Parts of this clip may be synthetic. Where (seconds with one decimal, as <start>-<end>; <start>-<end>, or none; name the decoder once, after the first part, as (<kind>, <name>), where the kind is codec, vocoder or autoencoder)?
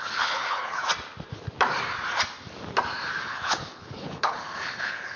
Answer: 0.0-0.8 (codec, HILCodec); 3.2-5.2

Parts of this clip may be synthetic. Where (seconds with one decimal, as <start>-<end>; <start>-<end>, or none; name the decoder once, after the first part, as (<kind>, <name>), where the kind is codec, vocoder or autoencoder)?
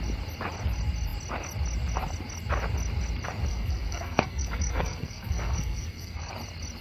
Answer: 3.5-6.3 (codec, SNAC)